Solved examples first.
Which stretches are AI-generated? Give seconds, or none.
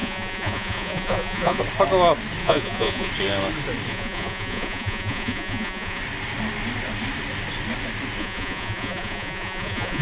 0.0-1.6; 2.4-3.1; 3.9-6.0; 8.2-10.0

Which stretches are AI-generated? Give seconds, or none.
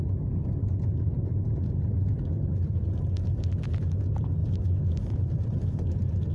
0.6-1.6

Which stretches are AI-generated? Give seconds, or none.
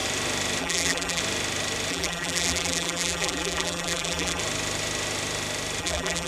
0.6-1.2; 1.9-4.4; 5.8-6.3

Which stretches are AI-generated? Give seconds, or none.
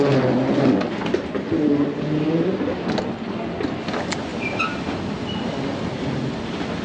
none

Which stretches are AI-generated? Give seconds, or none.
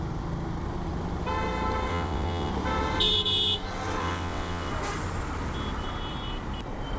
1.9-2.5; 4.0-4.7